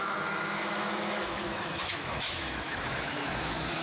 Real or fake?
fake